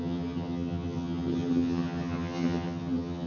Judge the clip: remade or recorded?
remade